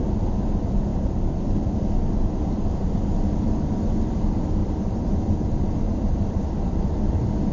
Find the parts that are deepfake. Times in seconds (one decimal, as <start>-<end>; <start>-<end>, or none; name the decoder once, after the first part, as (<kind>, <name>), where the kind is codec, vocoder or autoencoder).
0.9-3.8 (vocoder, BigVGAN v2); 4.6-6.5